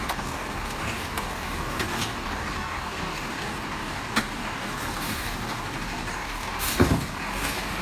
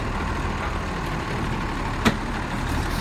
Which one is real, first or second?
second